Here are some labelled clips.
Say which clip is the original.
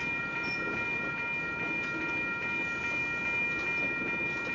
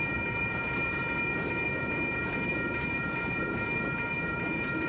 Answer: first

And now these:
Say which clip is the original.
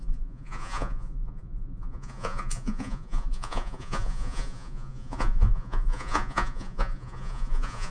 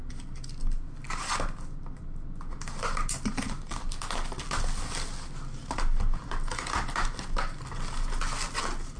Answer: second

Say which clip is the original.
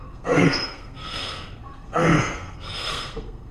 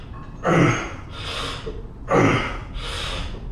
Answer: second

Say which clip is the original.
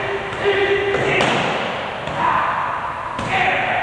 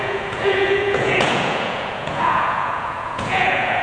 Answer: first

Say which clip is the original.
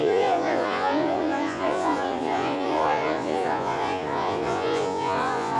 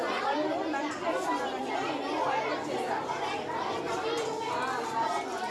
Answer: second